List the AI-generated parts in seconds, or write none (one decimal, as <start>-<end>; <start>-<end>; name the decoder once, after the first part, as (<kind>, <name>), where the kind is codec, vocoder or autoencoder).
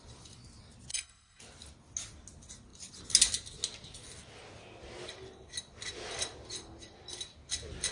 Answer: 0.9-1.4 (codec, HILCodec)